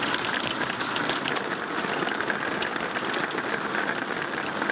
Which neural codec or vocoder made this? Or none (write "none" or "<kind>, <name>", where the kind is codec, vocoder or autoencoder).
none